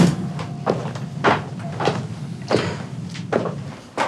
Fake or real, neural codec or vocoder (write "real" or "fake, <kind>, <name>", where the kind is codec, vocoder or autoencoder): real